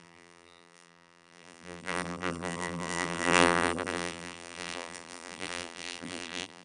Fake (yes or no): yes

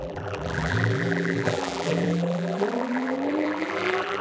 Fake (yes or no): yes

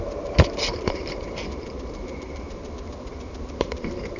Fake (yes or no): yes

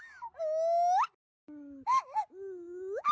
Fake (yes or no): no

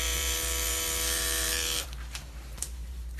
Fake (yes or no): yes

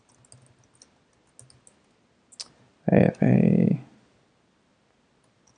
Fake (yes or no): no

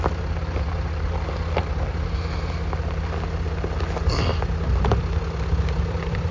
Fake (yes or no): no